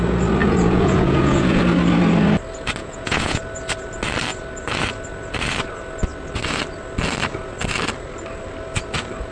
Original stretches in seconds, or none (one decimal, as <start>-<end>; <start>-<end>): 0.0-0.4; 1.6-2.8; 3.4-9.3